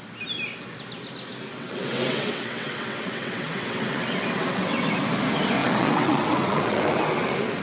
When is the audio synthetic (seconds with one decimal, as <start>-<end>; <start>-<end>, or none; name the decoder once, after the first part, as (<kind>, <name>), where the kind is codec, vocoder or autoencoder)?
1.5-4.8 (vocoder, WaveNeXt); 5.6-7.6